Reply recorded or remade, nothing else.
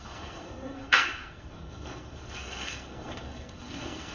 remade